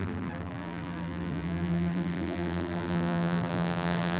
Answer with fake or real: fake